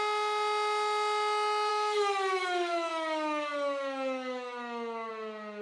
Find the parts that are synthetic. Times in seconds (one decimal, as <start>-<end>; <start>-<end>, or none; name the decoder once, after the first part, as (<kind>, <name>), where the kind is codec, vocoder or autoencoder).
1.7-5.1 (autoencoder, DAC-VAE)